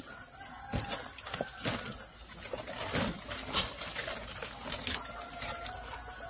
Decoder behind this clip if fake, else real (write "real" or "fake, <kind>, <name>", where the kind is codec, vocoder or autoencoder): real